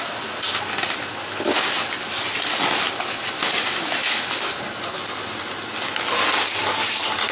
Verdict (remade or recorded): recorded